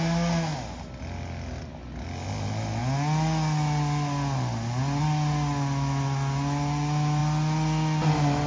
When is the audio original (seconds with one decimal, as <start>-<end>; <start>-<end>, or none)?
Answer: 0.0-8.5